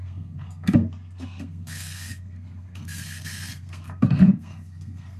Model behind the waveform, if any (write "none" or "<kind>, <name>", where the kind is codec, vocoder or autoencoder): codec, SNAC